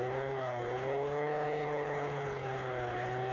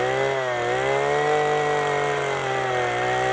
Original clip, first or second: second